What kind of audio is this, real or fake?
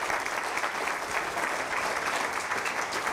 real